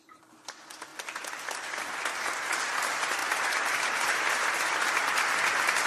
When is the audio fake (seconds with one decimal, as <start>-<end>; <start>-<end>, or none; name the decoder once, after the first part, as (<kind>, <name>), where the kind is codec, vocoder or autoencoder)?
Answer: 0.9-2.2 (vocoder, BigVGAN v2); 3.2-4.3